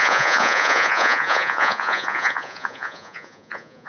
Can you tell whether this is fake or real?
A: fake